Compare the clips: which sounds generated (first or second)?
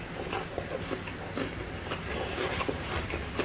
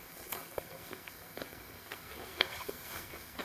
second